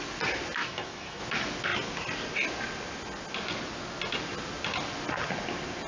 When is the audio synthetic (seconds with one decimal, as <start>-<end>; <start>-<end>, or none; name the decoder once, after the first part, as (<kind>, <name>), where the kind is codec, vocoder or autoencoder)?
0.6-1.2 (autoencoder, DAC-VAE)